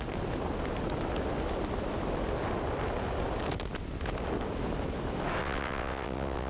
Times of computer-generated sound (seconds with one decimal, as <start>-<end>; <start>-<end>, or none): 5.4-6.5